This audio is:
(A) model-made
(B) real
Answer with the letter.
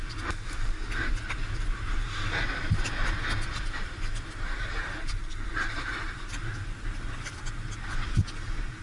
B